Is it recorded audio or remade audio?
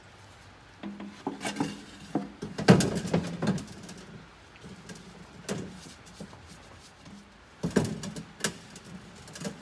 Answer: recorded